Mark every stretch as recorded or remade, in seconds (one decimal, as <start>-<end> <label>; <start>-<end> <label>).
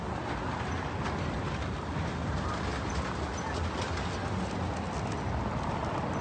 0.0-6.2 recorded